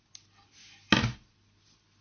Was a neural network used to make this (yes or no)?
no